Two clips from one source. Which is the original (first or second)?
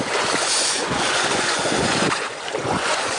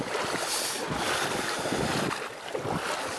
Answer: second